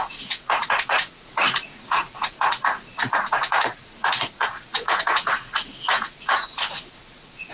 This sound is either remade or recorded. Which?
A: remade